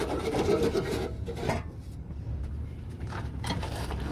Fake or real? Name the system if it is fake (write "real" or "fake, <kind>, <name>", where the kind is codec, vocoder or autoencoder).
fake, vocoder, BigVGAN v2